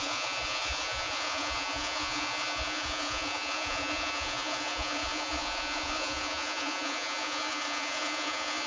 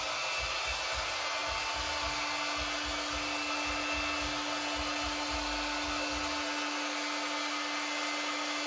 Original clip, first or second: second